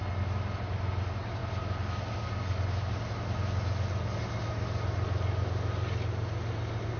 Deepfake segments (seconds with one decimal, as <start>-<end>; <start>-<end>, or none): none